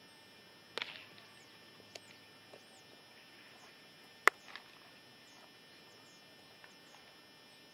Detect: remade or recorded recorded